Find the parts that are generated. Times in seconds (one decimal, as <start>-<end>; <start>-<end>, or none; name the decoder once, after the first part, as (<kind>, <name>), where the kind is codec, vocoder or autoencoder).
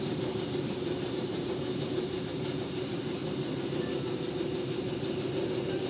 0.0-3.2 (vocoder, BigVGAN v2)